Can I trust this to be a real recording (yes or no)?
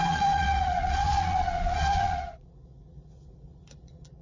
no